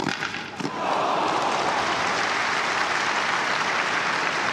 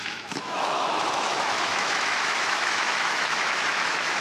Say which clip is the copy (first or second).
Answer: second